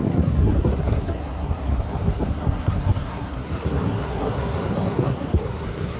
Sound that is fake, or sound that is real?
fake